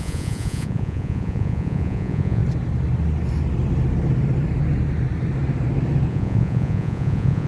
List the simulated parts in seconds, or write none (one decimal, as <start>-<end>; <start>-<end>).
0.0-2.4; 6.1-7.5